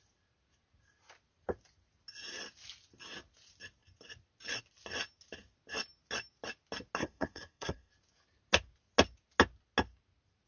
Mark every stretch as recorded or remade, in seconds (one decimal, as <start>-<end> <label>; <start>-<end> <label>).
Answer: 0.0-7.0 recorded; 7.0-7.9 remade; 7.9-10.5 recorded